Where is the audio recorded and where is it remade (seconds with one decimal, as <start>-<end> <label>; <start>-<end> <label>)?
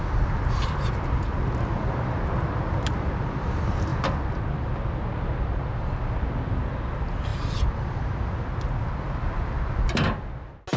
0.0-10.8 recorded